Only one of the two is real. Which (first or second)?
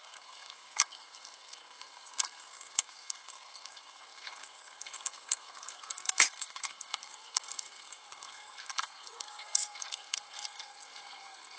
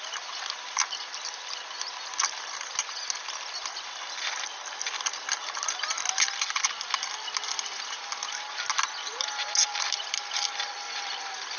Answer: second